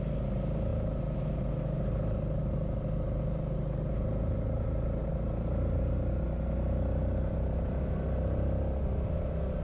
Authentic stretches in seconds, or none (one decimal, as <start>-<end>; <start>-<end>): 0.0-9.6